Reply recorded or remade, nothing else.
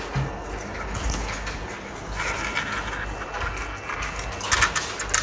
recorded